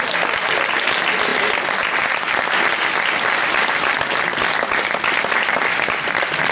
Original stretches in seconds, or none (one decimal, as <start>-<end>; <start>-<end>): 0.0-6.5